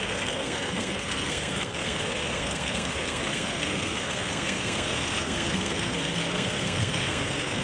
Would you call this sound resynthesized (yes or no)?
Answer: yes